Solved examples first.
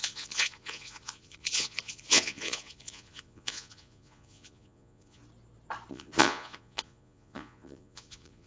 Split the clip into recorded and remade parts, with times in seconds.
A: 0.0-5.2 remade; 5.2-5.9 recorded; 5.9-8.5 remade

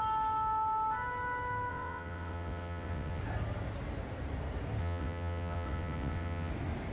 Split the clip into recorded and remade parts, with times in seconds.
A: 0.0-1.7 recorded; 1.7-3.2 remade; 3.2-4.8 recorded; 4.8-6.5 remade; 6.5-6.9 recorded

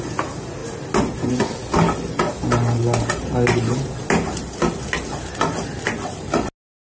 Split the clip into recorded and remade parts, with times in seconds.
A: 0.0-6.9 recorded